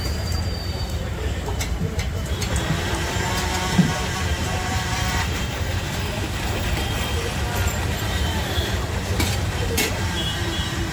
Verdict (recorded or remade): remade